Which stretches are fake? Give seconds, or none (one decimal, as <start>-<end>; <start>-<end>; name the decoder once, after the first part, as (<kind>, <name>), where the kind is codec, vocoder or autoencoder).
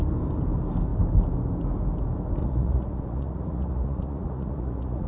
2.4-5.1 (vocoder, Vocos)